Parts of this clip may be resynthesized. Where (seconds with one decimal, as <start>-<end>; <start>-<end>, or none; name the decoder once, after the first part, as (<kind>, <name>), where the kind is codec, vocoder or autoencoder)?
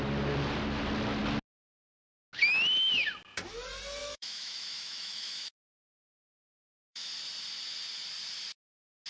4.0-7.1 (autoencoder, DAC-VAE)